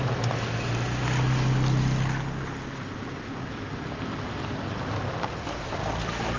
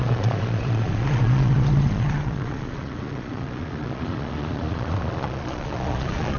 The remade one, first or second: second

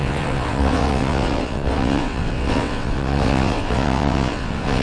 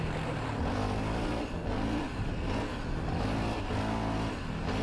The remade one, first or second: first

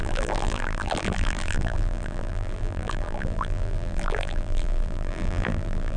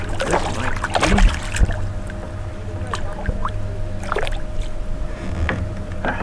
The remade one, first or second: first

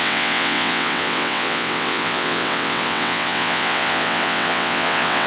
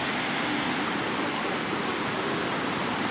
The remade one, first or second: first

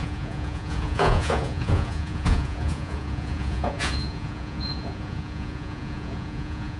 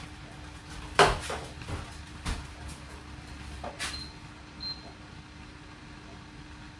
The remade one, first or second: first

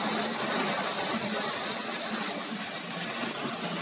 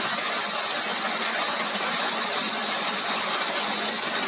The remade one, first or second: second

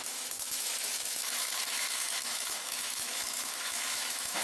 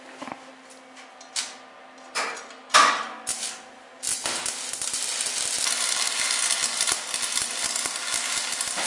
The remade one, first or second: first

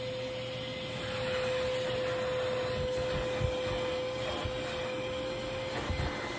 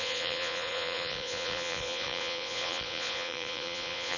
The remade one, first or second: second